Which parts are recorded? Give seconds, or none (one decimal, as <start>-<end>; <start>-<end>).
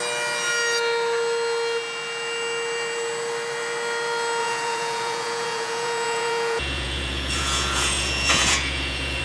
0.0-4.4